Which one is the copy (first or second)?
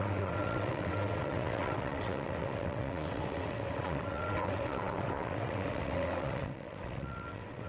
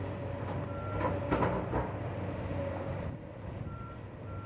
first